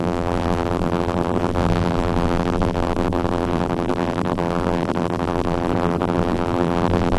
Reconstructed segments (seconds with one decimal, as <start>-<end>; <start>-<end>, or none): 0.0-7.2